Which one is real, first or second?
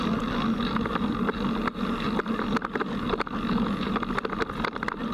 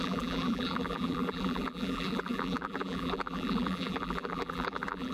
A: first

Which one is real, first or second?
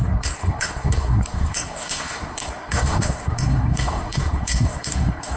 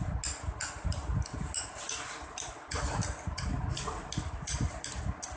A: second